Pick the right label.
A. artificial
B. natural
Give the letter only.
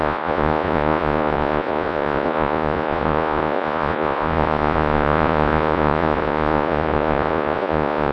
A